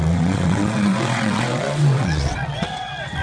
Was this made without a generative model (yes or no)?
no